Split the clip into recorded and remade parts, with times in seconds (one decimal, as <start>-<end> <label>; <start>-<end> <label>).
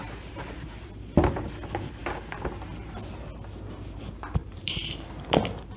0.0-0.9 remade; 0.9-4.4 recorded; 4.4-5.8 remade